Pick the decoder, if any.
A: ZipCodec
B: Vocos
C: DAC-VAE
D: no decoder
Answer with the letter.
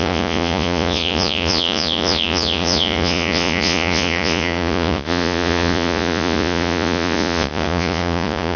B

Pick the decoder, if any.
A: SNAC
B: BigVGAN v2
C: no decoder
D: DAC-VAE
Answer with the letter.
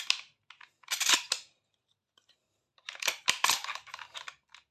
C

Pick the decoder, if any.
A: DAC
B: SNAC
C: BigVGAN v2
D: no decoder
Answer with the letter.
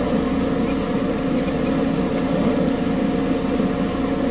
D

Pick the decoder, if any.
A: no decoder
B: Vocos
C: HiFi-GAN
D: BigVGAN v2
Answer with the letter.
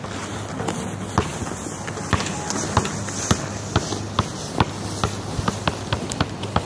A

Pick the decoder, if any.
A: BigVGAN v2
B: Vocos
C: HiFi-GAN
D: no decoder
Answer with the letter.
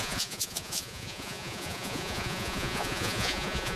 B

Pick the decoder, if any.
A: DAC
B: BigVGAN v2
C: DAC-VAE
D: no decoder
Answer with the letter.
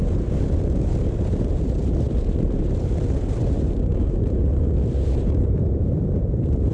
B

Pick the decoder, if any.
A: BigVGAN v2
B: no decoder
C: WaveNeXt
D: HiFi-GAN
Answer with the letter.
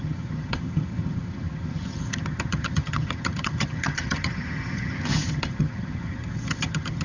D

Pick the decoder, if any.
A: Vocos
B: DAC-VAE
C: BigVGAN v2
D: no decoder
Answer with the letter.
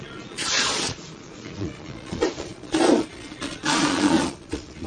A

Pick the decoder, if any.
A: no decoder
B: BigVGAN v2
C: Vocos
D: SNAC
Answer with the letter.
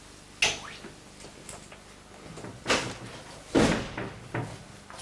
A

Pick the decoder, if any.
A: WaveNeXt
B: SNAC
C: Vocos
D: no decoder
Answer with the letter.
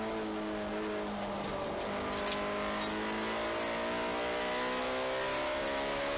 D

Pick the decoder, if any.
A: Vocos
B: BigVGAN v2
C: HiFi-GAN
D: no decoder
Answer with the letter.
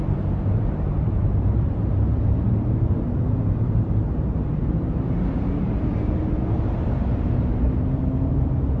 B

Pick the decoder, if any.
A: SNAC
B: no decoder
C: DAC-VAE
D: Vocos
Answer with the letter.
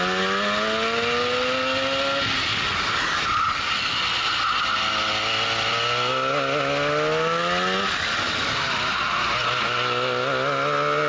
B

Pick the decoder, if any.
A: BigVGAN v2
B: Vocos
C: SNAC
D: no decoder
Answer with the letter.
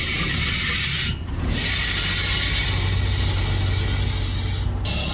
D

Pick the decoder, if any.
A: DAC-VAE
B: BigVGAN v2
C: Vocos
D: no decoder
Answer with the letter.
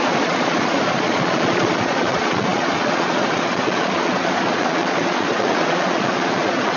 C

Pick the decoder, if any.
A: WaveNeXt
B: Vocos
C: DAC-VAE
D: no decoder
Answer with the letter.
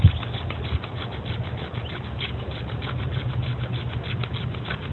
D